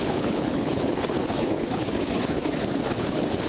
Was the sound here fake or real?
fake